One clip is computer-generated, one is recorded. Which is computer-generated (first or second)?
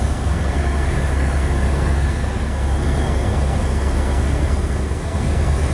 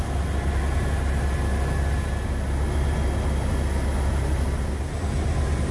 first